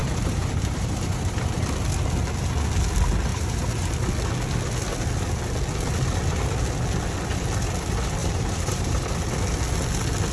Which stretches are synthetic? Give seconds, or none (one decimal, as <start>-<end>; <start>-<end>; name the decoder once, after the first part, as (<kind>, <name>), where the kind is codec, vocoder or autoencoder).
0.0-1.6 (vocoder, BigVGAN v2); 3.3-3.9; 8.2-9.0